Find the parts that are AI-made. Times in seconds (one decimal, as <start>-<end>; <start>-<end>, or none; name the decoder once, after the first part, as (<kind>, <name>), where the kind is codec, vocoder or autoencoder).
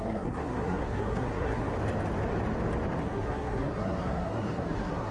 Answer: 0.0-1.7 (codec, SNAC); 3.0-5.1